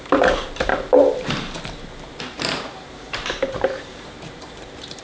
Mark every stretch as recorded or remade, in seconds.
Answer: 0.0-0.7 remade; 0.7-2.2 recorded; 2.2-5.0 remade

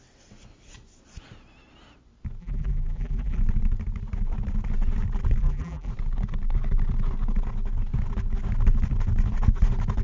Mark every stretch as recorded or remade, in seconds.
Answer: 0.0-2.4 recorded; 2.4-3.4 remade; 3.4-5.4 recorded; 5.4-5.9 remade; 5.9-10.0 recorded

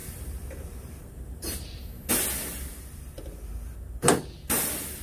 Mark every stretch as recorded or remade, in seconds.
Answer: 0.0-2.1 remade; 2.1-5.0 recorded

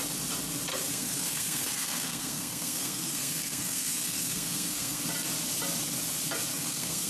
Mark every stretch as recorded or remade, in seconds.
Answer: 0.0-0.7 recorded; 0.7-5.0 remade; 5.0-6.5 recorded; 6.5-7.1 remade

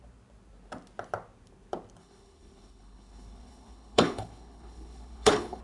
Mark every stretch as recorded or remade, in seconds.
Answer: 0.0-2.0 recorded; 2.0-5.6 remade